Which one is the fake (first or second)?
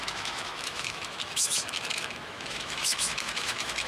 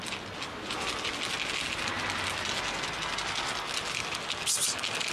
first